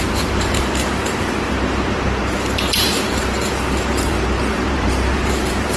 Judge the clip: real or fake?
fake